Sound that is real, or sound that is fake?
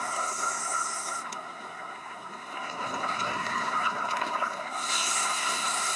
fake